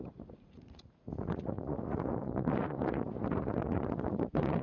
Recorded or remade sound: remade